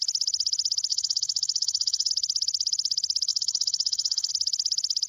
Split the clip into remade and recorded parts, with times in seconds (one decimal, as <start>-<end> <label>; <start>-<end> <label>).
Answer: 0.0-0.9 recorded; 0.9-2.1 remade; 2.1-3.3 recorded; 3.3-4.3 remade; 4.3-5.1 recorded